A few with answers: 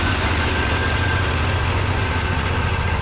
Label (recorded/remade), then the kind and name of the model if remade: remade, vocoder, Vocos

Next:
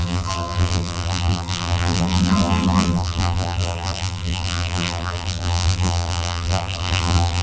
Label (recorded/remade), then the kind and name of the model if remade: remade, vocoder, BigVGAN v2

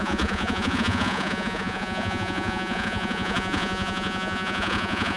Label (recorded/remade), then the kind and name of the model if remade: remade, vocoder, Vocos